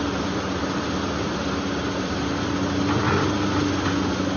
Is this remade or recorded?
recorded